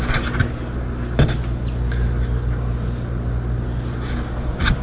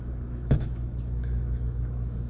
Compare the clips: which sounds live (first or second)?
first